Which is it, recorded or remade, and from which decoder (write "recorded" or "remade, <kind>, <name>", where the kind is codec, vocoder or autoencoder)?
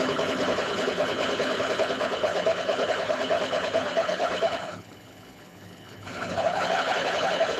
remade, codec, HILCodec